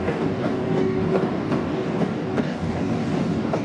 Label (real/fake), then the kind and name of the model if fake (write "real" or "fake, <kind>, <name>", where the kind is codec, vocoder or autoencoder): fake, codec, DAC